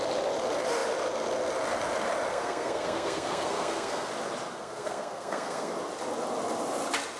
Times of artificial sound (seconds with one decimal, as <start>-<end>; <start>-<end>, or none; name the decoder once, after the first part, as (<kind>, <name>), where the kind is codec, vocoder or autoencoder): 2.3-4.1 (codec, SNAC); 4.5-5.7